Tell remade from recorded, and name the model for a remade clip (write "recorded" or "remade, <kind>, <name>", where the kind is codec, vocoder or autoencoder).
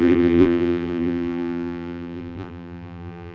remade, vocoder, BigVGAN v2